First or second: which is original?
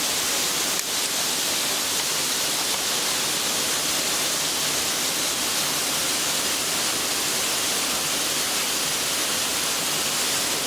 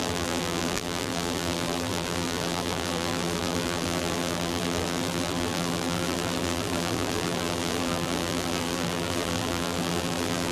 first